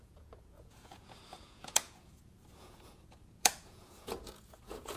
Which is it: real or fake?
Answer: fake